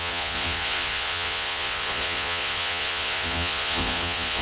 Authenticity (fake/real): fake